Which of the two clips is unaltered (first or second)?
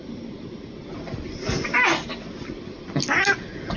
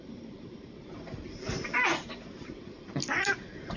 first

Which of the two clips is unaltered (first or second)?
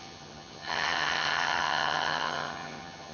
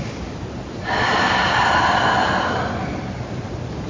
second